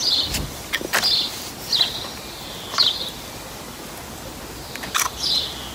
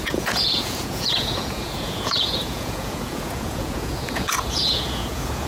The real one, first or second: first